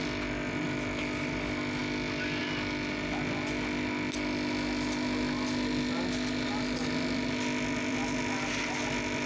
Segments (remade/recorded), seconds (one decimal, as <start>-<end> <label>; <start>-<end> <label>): 0.0-9.3 recorded